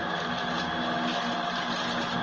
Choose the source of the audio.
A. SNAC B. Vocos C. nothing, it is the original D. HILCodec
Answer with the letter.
C